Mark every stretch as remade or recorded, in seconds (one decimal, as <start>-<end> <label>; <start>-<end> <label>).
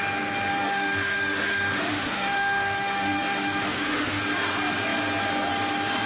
0.0-0.5 recorded; 0.5-4.2 remade; 4.2-6.1 recorded